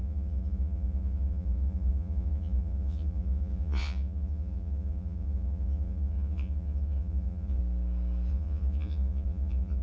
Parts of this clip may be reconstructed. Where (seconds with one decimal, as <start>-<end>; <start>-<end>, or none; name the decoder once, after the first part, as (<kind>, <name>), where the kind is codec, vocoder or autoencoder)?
0.0-7.6 (vocoder, Vocos); 8.3-9.8